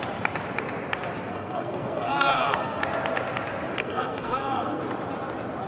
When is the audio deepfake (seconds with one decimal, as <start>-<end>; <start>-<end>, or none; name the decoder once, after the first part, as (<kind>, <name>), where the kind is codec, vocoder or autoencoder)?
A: 1.3-2.8 (codec, SNAC); 3.8-4.8